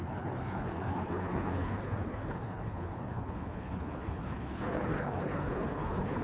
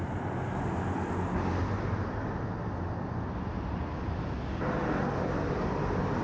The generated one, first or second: first